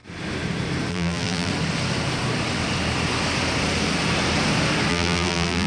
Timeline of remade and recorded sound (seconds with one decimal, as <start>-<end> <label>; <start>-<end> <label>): 0.0-0.9 recorded; 0.9-1.5 remade; 1.5-4.9 recorded; 4.9-5.7 remade